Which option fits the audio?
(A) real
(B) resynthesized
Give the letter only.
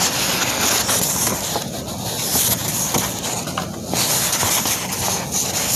A